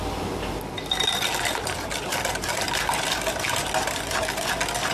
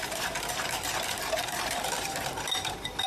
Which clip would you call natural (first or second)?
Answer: first